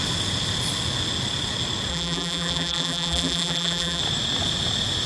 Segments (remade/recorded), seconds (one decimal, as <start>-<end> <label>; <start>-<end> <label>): 0.0-1.9 recorded; 1.9-4.0 remade; 4.0-5.1 recorded

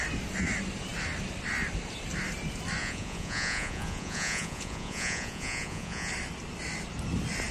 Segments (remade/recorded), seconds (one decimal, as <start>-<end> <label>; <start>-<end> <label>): 0.0-2.8 recorded; 2.8-6.1 remade; 6.1-7.5 recorded

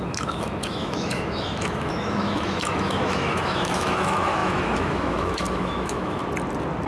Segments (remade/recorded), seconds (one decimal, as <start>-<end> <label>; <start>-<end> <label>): 0.0-6.2 remade; 6.2-6.9 recorded

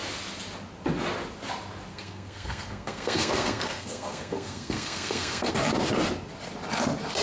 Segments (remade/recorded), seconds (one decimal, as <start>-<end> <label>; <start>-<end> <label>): 0.0-1.9 recorded; 1.9-5.5 remade; 5.5-7.2 recorded

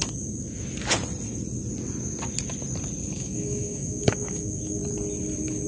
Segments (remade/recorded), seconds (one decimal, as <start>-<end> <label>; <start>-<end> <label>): 0.0-3.1 recorded; 3.1-4.8 remade; 4.8-5.7 recorded

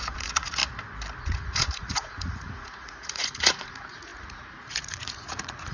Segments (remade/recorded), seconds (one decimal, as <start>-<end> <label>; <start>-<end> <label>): 0.0-0.6 remade; 0.6-1.2 recorded; 1.2-5.7 remade

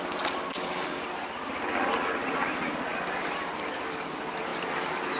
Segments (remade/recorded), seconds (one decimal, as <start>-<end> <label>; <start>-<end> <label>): 0.0-5.2 recorded